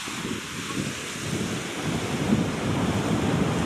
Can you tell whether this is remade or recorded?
recorded